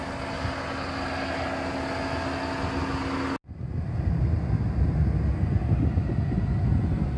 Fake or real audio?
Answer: real